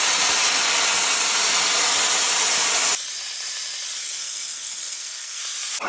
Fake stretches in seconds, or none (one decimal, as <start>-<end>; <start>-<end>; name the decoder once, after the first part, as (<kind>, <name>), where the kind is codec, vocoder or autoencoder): 4.0-5.4 (codec, SNAC)